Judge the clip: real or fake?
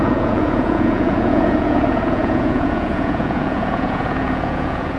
fake